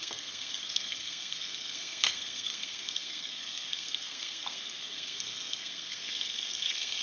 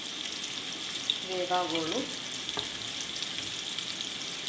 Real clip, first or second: second